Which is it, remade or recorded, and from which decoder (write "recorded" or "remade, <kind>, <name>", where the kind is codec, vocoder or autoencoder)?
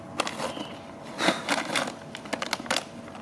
recorded